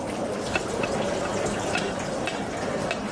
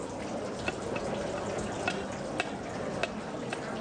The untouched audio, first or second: second